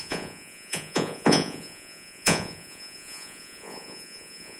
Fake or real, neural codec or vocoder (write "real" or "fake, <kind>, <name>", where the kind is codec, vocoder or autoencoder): fake, vocoder, Vocos